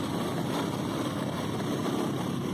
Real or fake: real